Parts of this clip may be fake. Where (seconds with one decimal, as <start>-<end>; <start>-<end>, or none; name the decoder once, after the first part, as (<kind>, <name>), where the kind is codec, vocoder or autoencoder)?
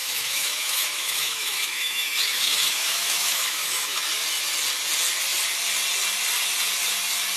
0.0-4.1 (autoencoder, DAC-VAE)